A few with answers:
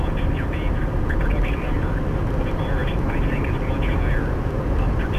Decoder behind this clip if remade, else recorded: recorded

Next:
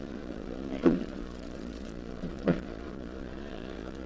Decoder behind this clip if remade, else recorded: remade, vocoder, Vocos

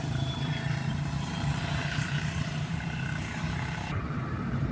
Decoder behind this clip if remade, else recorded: remade, vocoder, BigVGAN v2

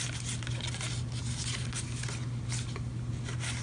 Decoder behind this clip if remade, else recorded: recorded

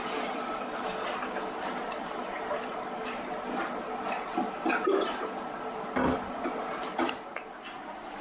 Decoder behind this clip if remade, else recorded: recorded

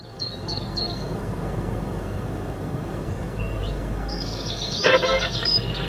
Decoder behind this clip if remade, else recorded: remade, codec, SNAC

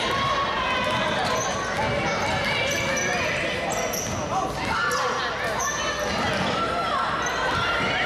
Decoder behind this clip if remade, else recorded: recorded